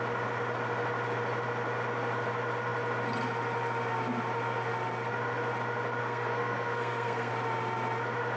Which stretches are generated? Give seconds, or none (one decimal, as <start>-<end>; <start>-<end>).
6.0-7.3